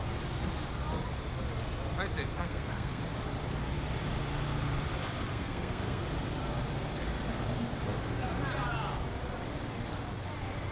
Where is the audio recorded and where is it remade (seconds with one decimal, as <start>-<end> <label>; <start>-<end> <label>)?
0.0-2.3 recorded; 2.3-3.0 remade; 3.0-5.3 recorded; 5.3-6.0 remade; 6.0-10.7 recorded